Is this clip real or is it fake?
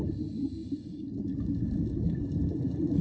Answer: real